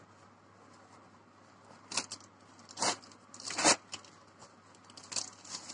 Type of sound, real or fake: real